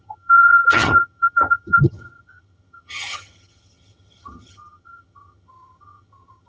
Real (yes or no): no